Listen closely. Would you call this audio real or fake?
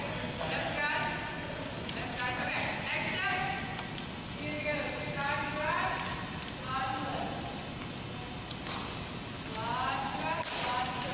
real